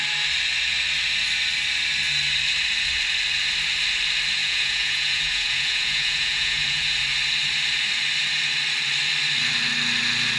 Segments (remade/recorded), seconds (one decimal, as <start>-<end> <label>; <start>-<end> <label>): 0.0-4.4 recorded; 4.4-7.0 remade; 7.0-10.4 recorded